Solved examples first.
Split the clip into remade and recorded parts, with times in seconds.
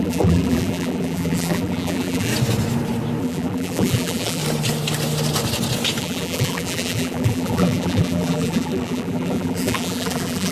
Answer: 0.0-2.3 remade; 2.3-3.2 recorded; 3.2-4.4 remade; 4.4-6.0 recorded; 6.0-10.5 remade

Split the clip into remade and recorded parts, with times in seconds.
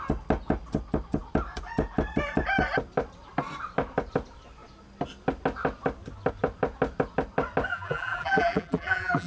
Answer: 0.0-7.7 recorded; 7.7-9.3 remade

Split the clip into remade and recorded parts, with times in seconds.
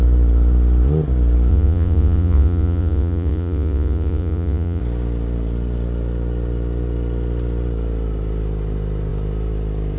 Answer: 0.0-1.5 recorded; 1.5-4.8 remade; 4.8-10.0 recorded